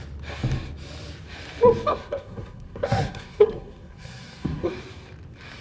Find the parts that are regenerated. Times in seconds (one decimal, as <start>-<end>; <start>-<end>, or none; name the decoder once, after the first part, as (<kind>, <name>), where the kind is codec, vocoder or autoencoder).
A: 1.9-4.7 (codec, SNAC)